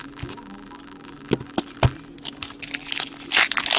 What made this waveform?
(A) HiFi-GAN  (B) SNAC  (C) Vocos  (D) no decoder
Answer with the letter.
D